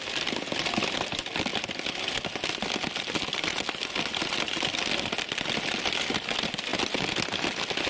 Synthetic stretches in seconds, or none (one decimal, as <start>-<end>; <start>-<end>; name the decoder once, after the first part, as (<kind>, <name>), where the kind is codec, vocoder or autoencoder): none